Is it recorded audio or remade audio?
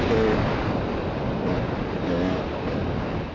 recorded